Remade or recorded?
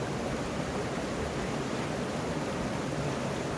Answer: remade